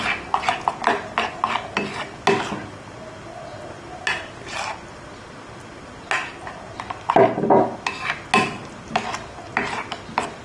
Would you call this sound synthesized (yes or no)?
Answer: no